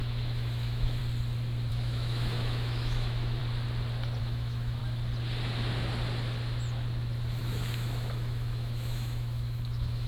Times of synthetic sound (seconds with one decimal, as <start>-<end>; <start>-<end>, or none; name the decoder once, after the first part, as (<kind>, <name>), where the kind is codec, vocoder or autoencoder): 0.0-1.0 (autoencoder, DAC-VAE); 1.7-3.4; 4.2-4.8; 7.4-10.1